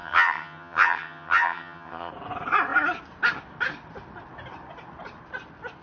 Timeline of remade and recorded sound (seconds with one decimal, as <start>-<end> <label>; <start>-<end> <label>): 0.0-2.1 remade; 2.1-5.8 recorded